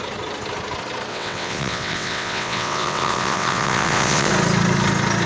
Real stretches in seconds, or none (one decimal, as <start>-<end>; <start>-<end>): 0.0-1.1; 4.3-5.3